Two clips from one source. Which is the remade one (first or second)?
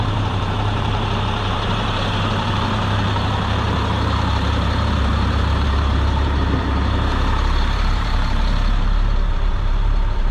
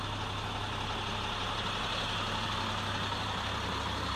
first